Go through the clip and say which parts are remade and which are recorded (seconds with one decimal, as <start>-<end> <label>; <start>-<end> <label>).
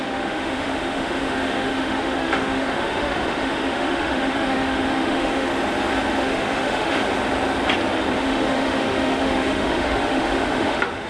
0.0-5.5 remade; 5.5-6.2 recorded; 6.2-7.0 remade; 7.0-8.2 recorded; 8.2-11.1 remade